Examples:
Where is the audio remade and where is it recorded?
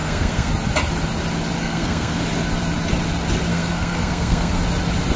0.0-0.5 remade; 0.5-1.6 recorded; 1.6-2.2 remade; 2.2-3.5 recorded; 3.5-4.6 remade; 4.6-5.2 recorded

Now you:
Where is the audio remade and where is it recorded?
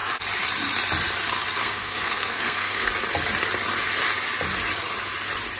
0.0-1.6 recorded; 1.6-2.9 remade; 2.9-5.6 recorded